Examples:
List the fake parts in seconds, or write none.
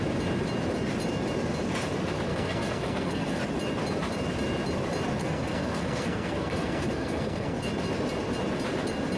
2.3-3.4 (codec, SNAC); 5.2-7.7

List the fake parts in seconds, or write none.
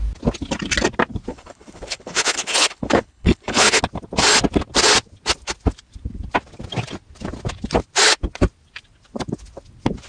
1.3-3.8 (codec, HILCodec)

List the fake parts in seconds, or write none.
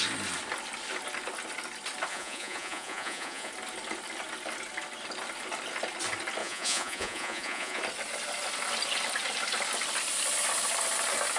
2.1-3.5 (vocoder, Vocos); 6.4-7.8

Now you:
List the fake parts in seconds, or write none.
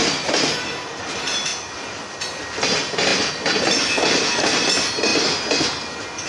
none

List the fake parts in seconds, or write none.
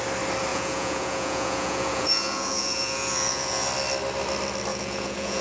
0.5-3.7 (vocoder, Vocos); 4.7-5.4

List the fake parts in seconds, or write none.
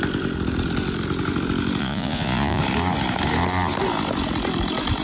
1.8-2.6 (vocoder, Vocos)